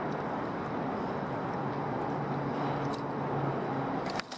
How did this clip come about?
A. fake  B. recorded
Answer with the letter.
B